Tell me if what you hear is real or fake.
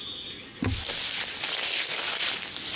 real